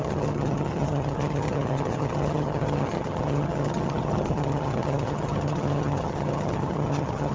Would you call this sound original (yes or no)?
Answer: no